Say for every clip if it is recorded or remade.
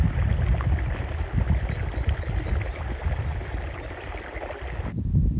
recorded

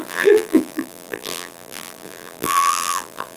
remade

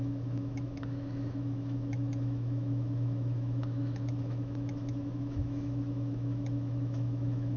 remade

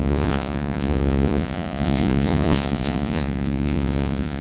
remade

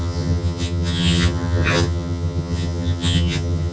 remade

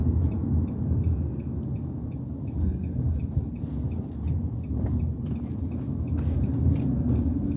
recorded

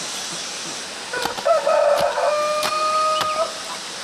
recorded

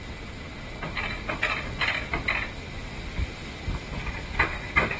recorded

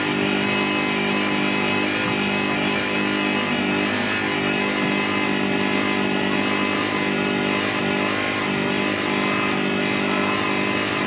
recorded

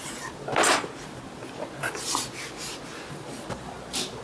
recorded